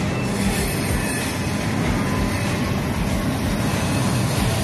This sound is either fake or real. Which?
real